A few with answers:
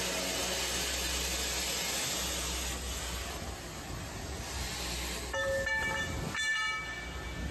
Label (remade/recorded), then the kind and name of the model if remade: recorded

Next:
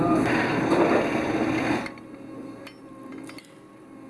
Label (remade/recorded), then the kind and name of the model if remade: recorded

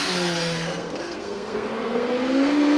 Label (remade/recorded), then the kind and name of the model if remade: remade, codec, SNAC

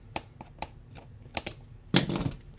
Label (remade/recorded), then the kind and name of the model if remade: recorded